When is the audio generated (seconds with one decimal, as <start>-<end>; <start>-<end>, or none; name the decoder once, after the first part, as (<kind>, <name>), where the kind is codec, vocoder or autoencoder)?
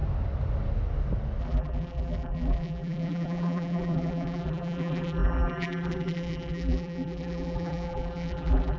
1.4-8.8 (vocoder, BigVGAN v2)